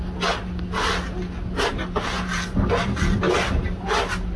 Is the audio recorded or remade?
recorded